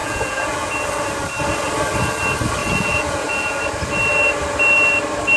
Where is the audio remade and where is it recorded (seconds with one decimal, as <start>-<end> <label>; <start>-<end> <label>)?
0.0-0.7 remade; 0.7-2.6 recorded; 2.6-3.6 remade; 3.6-5.4 recorded